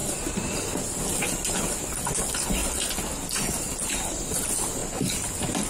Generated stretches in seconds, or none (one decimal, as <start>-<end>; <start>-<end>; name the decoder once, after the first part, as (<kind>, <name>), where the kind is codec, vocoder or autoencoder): 0.0-2.6 (vocoder, BigVGAN v2); 3.6-4.8